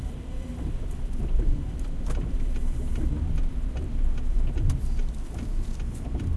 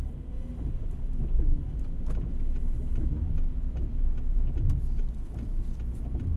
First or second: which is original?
second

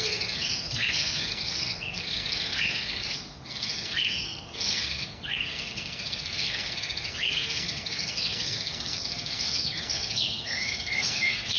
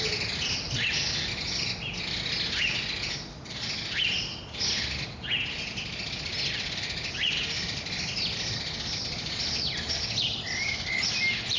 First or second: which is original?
second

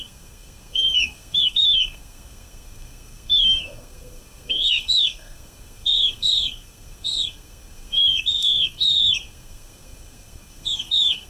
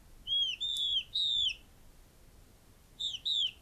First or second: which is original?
second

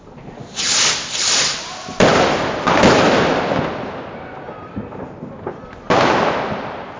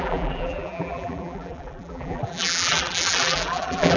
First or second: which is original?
first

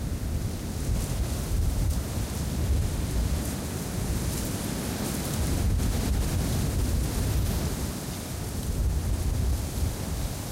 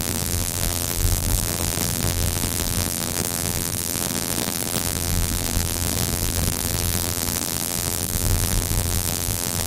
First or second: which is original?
first